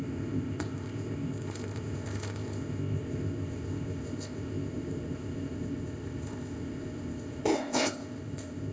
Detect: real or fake fake